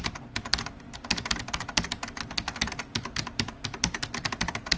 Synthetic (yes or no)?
no